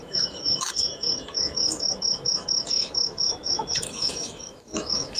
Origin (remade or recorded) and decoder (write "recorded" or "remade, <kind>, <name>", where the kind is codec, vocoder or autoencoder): remade, autoencoder, DAC-VAE